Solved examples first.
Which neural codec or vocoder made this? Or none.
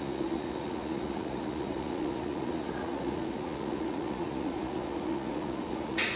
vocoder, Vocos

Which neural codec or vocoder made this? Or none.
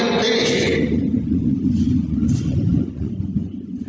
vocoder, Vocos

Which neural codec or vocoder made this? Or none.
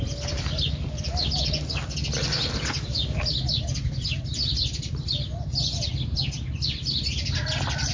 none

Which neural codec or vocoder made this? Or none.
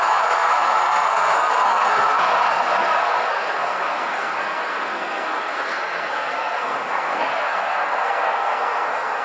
codec, SNAC